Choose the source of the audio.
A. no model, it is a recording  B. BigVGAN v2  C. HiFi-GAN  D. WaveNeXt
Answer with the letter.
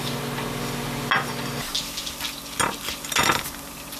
A